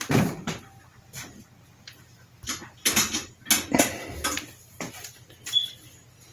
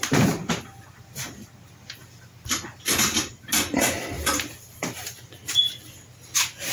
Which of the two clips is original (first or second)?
first